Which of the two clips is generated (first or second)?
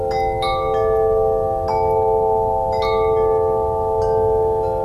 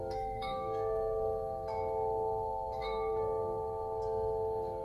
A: second